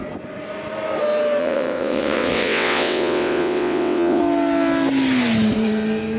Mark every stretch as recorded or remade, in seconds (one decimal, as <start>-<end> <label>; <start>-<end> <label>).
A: 0.0-1.4 recorded; 1.4-4.2 remade; 4.2-6.2 recorded